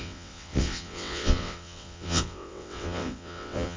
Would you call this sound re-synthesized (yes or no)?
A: yes